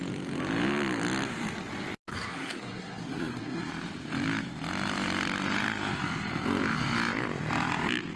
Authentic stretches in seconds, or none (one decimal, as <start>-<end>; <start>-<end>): 0.0-2.1; 3.7-8.2